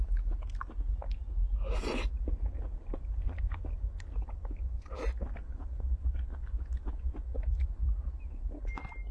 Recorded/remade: recorded